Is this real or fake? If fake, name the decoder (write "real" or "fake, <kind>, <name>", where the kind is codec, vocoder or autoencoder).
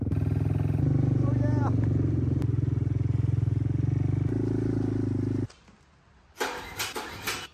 real